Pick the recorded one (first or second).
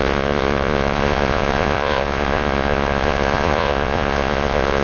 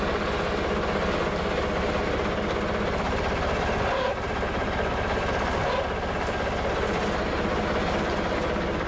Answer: second